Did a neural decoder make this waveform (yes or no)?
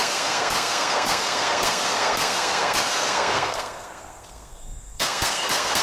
yes